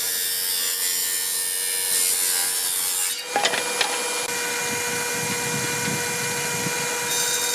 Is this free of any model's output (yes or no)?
yes